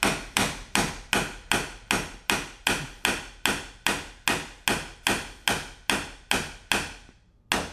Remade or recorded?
recorded